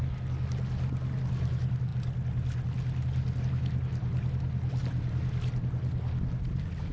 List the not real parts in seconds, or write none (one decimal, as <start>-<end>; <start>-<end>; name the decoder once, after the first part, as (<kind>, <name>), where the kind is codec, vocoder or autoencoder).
none